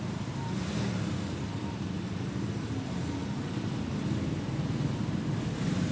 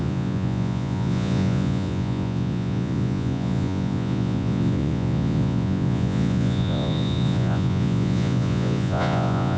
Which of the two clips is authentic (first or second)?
first